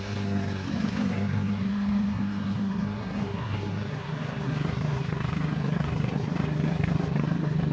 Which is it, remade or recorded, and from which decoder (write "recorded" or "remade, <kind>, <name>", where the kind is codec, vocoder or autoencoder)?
remade, codec, SNAC